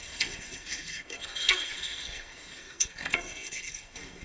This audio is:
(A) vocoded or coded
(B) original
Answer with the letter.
A